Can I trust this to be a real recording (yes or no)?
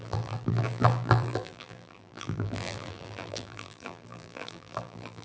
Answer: no